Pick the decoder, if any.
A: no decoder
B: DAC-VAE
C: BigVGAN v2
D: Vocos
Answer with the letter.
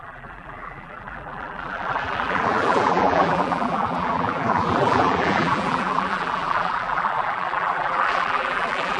C